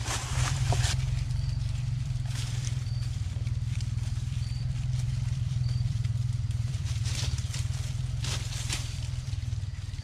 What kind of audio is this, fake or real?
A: fake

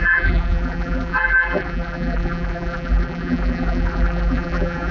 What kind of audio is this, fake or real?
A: fake